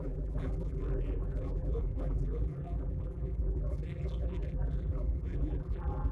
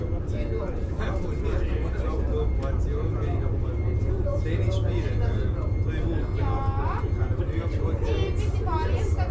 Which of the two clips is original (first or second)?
second